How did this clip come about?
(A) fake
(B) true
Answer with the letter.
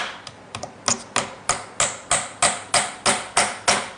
B